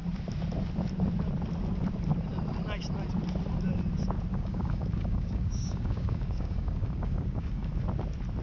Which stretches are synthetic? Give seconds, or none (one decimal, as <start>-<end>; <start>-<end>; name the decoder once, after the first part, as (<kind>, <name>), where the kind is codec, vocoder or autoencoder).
4.3-7.7 (codec, DAC)